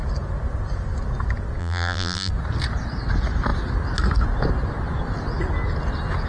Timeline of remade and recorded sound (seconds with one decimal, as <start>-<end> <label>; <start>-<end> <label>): 0.0-1.6 recorded; 1.6-2.3 remade; 2.3-6.3 recorded

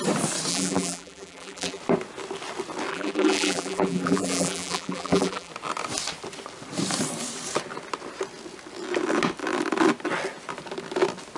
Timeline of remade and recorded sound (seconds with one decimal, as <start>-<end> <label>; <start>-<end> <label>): 0.0-0.5 recorded; 0.5-1.8 remade; 1.8-2.9 recorded; 2.9-5.5 remade; 5.5-11.4 recorded

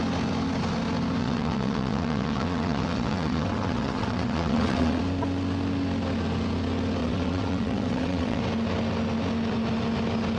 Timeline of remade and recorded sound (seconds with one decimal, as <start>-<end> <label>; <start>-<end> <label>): 0.0-1.2 recorded; 1.2-5.0 remade; 5.0-7.0 recorded; 7.0-8.4 remade; 8.4-10.4 recorded

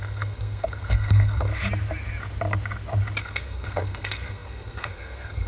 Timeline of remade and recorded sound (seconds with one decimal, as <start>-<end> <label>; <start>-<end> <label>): 0.0-1.5 remade; 1.5-3.2 recorded; 3.2-5.5 remade